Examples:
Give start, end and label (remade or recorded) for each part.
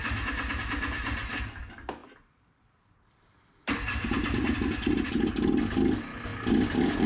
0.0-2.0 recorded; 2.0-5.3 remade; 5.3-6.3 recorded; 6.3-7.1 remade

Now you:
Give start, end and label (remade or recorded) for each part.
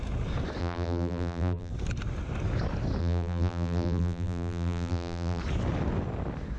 0.0-0.6 recorded; 0.6-1.7 remade; 1.7-3.0 recorded; 3.0-5.4 remade; 5.4-6.6 recorded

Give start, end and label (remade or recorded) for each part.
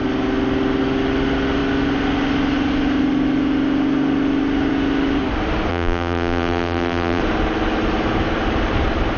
0.0-5.7 recorded; 5.7-7.2 remade; 7.2-9.2 recorded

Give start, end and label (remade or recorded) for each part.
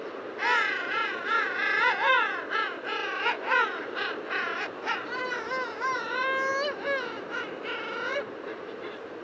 0.0-8.1 recorded; 8.1-9.2 remade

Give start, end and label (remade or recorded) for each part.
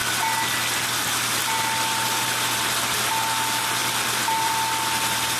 0.0-5.4 recorded